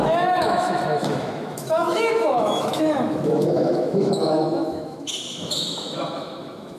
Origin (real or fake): fake